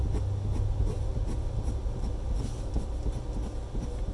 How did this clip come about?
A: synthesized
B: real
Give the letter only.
B